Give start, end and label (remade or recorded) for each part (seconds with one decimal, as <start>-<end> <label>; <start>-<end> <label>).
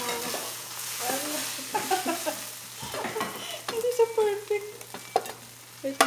0.0-0.4 recorded; 0.4-1.0 remade; 1.0-6.1 recorded